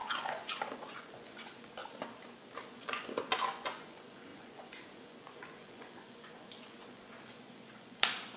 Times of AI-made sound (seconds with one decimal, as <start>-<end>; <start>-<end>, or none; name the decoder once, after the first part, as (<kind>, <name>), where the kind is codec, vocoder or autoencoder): 0.0-1.8 (vocoder, Vocos); 2.7-8.4